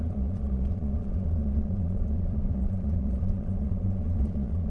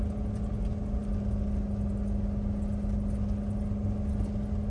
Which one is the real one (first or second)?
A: second